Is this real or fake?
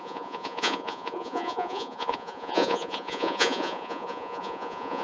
fake